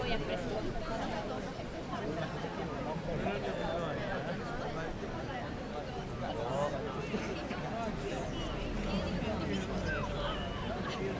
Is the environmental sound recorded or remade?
recorded